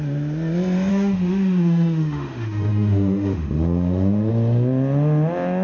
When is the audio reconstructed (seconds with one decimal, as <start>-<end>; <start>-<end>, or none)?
0.9-4.3